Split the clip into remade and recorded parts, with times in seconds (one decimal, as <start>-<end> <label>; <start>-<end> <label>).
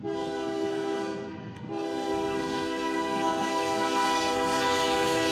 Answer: 0.0-5.3 remade